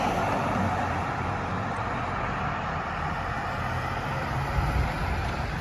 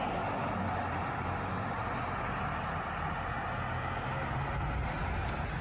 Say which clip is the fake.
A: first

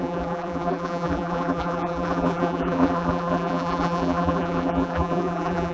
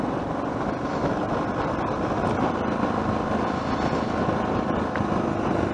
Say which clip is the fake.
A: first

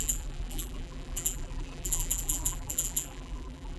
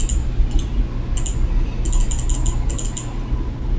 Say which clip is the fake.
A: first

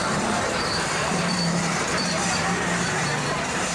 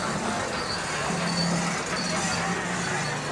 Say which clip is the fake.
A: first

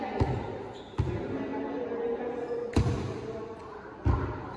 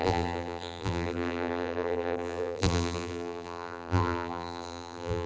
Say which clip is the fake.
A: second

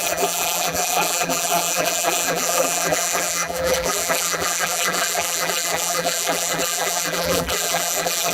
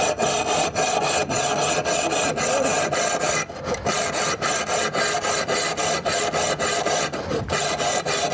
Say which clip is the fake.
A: first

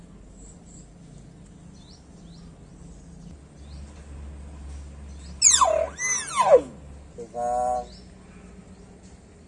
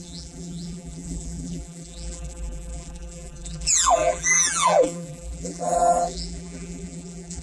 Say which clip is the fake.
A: second